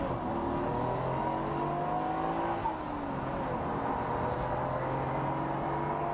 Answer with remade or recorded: recorded